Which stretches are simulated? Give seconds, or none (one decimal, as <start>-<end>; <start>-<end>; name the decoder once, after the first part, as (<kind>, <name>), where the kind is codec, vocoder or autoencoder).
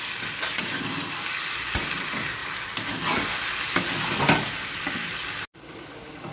none